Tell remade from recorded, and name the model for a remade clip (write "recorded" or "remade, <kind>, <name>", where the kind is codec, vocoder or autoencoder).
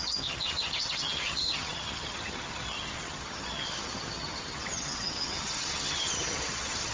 remade, vocoder, HiFi-GAN